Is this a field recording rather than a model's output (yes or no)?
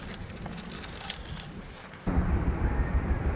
yes